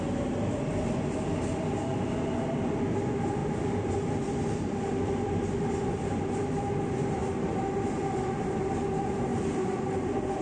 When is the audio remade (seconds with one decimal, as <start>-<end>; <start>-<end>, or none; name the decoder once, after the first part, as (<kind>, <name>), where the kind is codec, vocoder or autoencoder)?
3.4-6.6 (vocoder, BigVGAN v2); 9.3-10.4